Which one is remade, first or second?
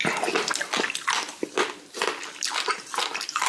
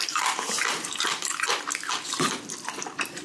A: second